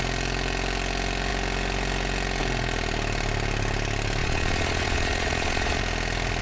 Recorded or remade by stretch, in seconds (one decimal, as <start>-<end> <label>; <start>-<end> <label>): 0.0-4.2 recorded; 4.2-5.8 remade; 5.8-6.4 recorded